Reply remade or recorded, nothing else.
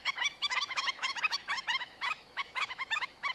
remade